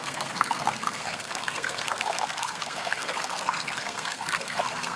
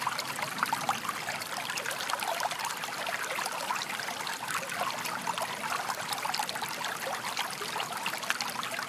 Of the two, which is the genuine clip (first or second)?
second